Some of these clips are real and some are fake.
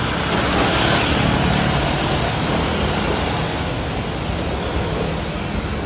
real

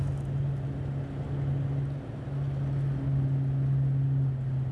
real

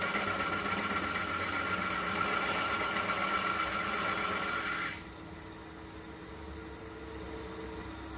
real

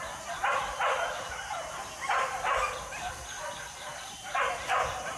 real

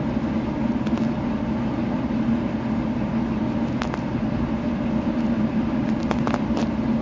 real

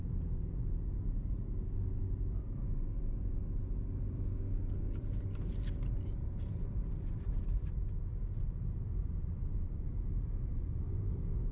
real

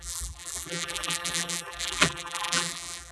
fake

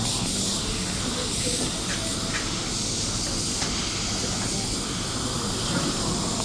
real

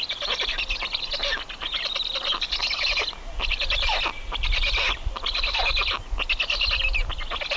real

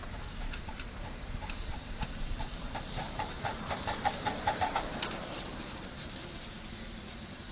fake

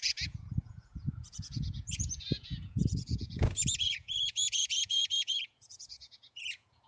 fake